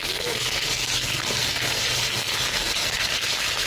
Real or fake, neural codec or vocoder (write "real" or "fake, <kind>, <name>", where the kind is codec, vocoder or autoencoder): fake, codec, SNAC